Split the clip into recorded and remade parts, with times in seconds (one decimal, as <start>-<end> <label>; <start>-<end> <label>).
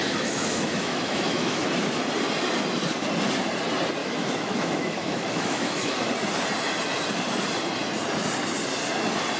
0.0-1.6 remade; 1.6-4.0 recorded; 4.0-6.1 remade; 6.1-9.4 recorded